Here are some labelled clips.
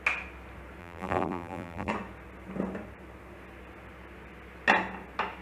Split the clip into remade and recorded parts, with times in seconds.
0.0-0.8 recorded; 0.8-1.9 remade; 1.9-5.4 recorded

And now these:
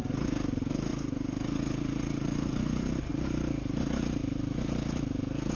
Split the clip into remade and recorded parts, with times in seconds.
0.0-0.9 recorded; 0.9-3.1 remade; 3.1-5.5 recorded

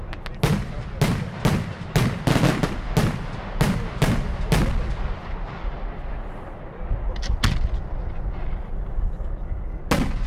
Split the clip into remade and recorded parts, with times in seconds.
0.0-10.3 recorded